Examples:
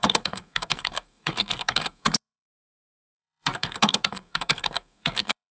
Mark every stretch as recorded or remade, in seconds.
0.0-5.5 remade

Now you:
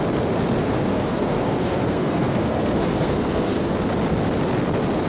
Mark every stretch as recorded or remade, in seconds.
0.0-0.6 recorded; 0.6-3.7 remade; 3.7-5.1 recorded

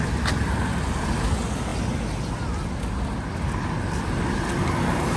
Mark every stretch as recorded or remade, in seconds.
0.0-5.2 recorded